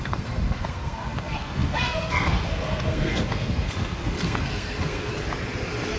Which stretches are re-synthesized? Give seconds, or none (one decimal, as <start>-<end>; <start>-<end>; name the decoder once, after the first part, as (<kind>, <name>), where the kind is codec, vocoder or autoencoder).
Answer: 0.0-5.1 (codec, SNAC)